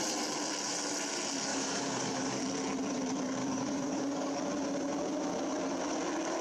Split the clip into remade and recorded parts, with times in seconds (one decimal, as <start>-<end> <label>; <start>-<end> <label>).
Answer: 0.0-1.5 recorded; 1.5-2.4 remade; 2.4-3.4 recorded; 3.4-4.4 remade; 4.4-6.4 recorded